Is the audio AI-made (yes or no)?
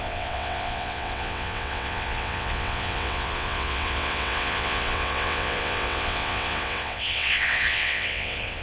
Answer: yes